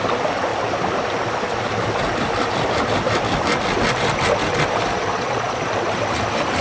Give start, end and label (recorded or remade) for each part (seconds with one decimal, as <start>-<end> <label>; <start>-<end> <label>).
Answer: 0.0-5.1 recorded; 5.1-5.7 remade; 5.7-6.6 recorded